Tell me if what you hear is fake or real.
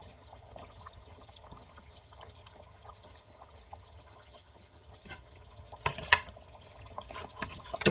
fake